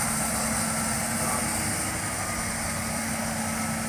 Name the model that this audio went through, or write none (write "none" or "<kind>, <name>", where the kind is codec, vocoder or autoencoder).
none